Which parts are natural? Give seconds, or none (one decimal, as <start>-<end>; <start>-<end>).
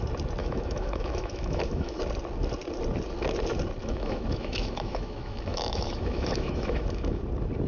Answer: 0.0-0.4; 2.0-3.8; 7.2-7.7